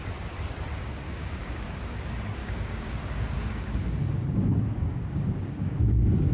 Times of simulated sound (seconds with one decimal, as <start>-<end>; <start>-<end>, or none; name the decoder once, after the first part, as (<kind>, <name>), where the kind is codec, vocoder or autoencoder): 0.8-2.0 (codec, DAC); 2.4-6.3